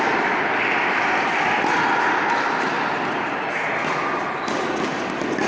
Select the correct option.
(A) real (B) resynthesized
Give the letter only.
A